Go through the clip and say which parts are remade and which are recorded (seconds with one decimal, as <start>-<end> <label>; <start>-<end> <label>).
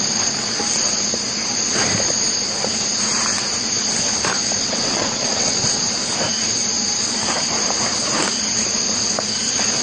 0.0-4.6 recorded; 4.6-5.8 remade; 5.8-9.8 recorded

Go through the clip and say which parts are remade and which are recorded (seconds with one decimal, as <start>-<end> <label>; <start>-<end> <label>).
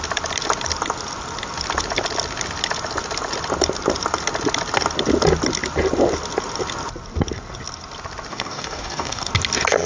0.0-8.3 recorded; 8.3-9.3 remade; 9.3-9.9 recorded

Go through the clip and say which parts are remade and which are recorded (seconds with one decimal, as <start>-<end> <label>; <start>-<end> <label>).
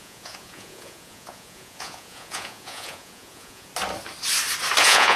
0.0-3.7 remade; 3.7-4.8 recorded; 4.8-5.2 remade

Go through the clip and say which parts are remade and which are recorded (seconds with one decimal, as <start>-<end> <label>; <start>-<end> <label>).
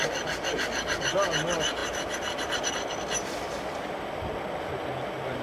0.0-1.8 recorded; 1.8-2.7 remade; 2.7-5.4 recorded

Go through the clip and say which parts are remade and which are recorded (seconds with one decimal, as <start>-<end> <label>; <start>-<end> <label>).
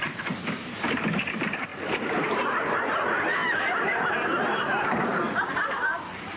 0.0-6.4 remade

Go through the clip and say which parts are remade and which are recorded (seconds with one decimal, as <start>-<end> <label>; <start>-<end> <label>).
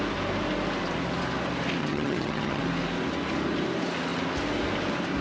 0.0-1.8 recorded; 1.8-2.6 remade; 2.6-5.2 recorded